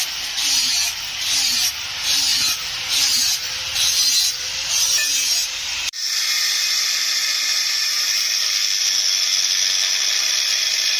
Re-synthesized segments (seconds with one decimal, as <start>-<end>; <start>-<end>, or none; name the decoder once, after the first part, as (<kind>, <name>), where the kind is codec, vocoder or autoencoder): 0.0-8.6 (vocoder, BigVGAN v2); 10.3-11.0